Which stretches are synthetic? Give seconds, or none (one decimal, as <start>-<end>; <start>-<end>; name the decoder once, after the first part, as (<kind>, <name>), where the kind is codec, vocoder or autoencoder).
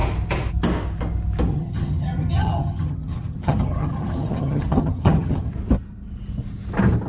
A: 1.5-5.5 (vocoder, HiFi-GAN)